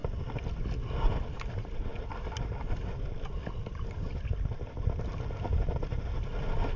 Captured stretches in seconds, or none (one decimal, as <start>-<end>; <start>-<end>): 0.0-6.8